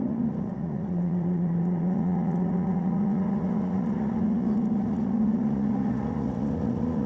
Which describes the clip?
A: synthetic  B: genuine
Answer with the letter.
A